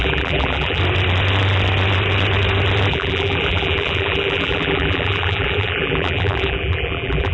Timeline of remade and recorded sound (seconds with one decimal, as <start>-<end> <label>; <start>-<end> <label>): 0.0-0.8 remade; 0.8-2.9 recorded; 2.9-7.3 remade